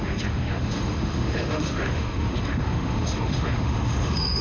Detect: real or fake fake